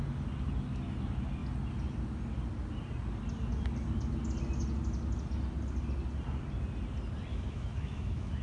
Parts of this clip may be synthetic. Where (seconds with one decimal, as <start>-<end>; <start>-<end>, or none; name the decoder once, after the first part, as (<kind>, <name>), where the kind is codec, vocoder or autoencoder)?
7.3-8.4 (autoencoder, DAC-VAE)